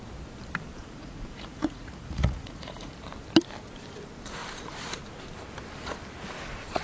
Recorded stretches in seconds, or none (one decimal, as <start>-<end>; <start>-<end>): 0.0-0.8; 2.9-6.8